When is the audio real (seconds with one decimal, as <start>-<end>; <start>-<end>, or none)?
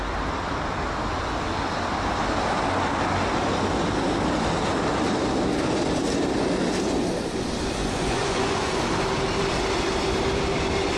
0.0-7.8; 8.8-11.0